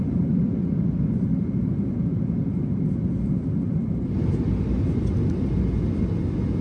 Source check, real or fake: real